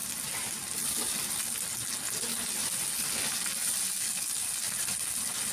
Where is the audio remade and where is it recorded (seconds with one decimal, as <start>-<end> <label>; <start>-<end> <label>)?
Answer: 0.0-1.4 remade; 1.4-5.5 recorded

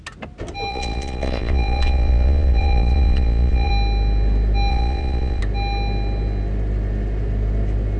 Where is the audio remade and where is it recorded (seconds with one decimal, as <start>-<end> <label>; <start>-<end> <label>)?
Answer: 0.0-0.7 recorded; 0.7-3.7 remade; 3.7-4.7 recorded; 4.7-5.4 remade; 5.4-8.0 recorded

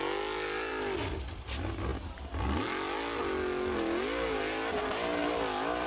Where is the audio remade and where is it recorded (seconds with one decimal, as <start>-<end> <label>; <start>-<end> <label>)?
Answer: 0.0-5.9 recorded

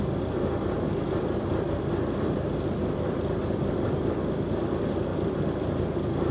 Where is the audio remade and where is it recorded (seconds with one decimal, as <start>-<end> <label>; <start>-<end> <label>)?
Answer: 0.0-5.1 recorded; 5.1-5.7 remade; 5.7-6.3 recorded

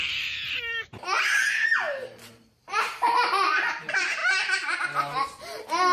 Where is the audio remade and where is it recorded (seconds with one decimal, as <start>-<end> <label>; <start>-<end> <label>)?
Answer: 0.0-1.7 recorded; 1.7-3.7 remade; 3.7-4.2 recorded; 4.2-4.8 remade; 4.8-5.9 recorded

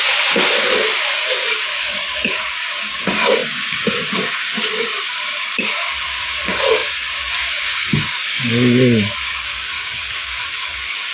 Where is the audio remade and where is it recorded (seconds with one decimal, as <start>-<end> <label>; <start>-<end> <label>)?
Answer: 0.0-11.1 remade

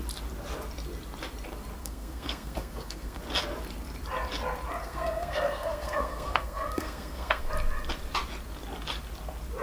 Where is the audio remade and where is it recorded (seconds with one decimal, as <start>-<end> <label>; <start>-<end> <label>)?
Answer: 0.0-1.8 recorded; 1.8-3.2 remade; 3.2-4.8 recorded; 4.8-7.5 remade; 7.5-9.6 recorded